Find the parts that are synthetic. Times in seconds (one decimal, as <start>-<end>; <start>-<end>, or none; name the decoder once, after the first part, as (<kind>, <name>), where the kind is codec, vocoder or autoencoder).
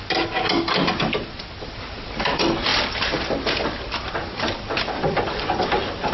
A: none